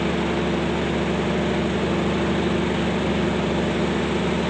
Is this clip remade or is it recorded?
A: recorded